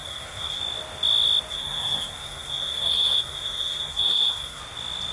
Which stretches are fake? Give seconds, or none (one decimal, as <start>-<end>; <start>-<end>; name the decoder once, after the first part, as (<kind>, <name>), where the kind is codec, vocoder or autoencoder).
0.0-0.6 (codec, SNAC); 1.5-4.6